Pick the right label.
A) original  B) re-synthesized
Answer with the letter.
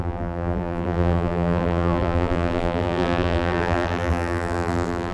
B